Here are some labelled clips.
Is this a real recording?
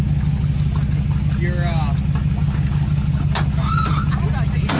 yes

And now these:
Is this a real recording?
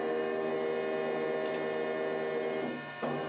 yes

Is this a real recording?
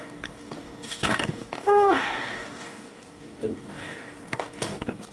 no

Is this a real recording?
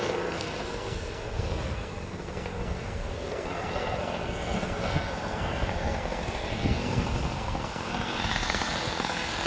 no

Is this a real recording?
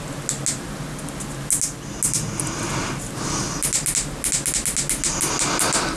yes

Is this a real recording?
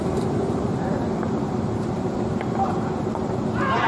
no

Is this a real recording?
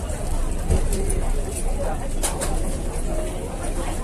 yes